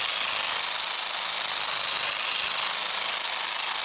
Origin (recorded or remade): recorded